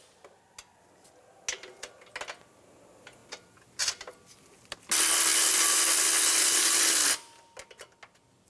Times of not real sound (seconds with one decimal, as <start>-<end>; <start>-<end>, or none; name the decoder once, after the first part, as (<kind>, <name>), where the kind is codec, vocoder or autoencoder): none